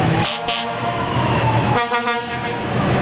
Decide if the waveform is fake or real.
fake